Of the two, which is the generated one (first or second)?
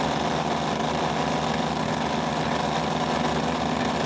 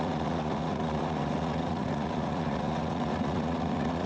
second